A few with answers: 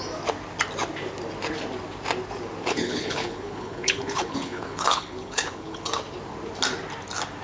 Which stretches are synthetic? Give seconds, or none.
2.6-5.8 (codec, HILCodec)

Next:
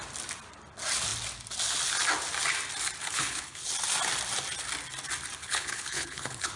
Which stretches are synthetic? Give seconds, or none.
3.0-3.7 (codec, HILCodec); 5.4-6.6

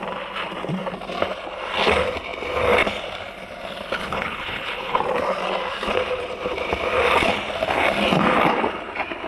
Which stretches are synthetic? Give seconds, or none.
4.0-5.0 (codec, HILCodec)